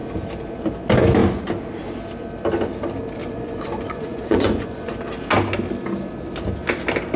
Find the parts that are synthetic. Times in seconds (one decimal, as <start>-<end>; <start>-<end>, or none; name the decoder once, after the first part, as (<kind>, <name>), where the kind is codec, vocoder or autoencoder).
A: 3.2-4.9 (vocoder, Vocos)